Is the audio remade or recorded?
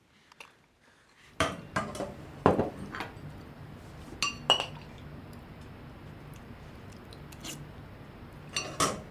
recorded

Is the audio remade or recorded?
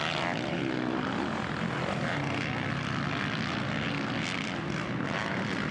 recorded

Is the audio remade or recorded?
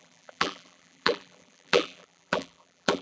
remade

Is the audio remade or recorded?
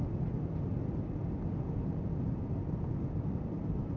recorded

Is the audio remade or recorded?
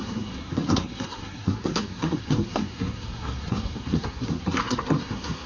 remade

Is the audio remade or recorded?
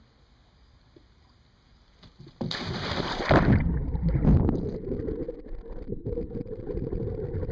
recorded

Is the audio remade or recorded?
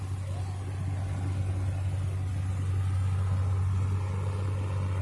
recorded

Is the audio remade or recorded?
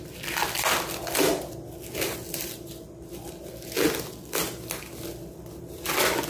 recorded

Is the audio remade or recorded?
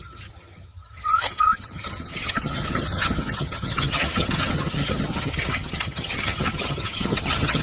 remade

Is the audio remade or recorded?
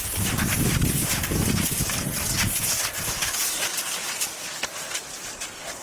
recorded